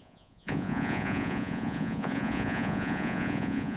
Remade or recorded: remade